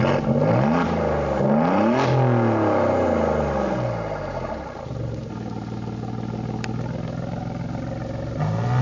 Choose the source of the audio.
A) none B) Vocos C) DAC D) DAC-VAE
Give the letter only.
A